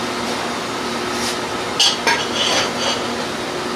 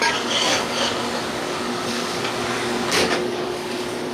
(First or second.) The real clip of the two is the first